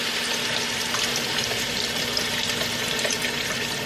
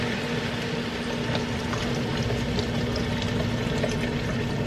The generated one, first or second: first